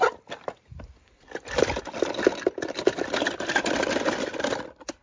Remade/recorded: remade